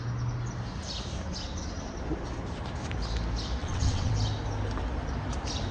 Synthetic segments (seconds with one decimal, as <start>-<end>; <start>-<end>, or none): 3.6-4.1